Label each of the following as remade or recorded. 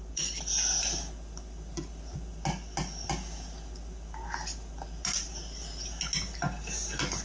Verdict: recorded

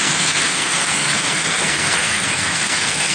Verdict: remade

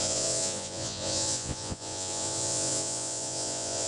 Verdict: remade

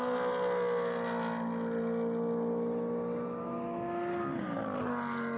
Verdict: recorded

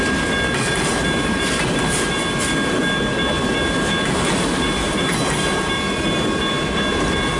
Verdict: recorded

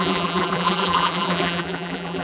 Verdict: remade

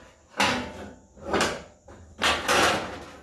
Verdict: recorded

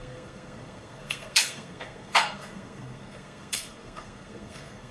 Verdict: remade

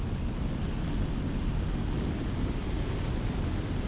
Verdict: recorded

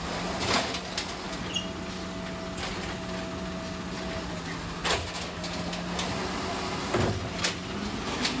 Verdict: recorded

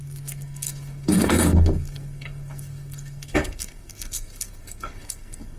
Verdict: remade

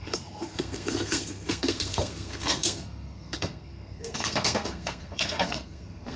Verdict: remade